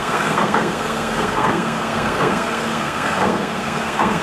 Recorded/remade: remade